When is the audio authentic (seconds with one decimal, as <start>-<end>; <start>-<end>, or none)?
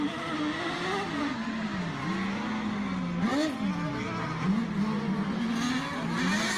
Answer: 0.0-6.6